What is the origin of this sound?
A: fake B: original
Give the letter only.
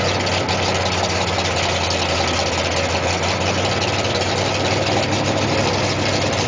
B